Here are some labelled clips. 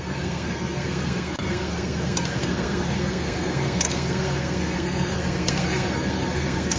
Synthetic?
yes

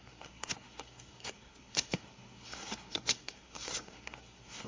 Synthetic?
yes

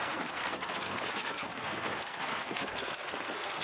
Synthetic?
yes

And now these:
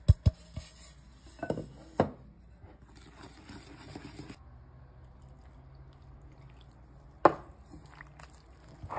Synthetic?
no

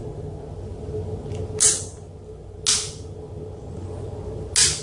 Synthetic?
no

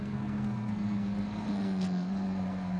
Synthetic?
yes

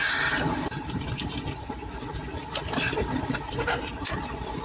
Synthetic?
no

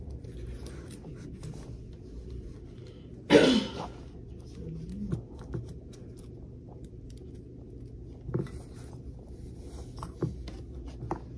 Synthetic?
no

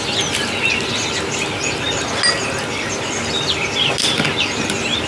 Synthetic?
no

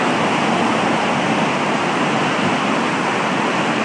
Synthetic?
no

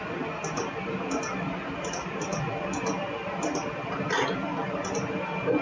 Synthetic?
no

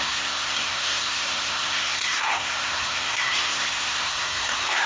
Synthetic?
yes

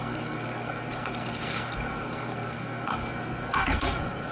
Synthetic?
yes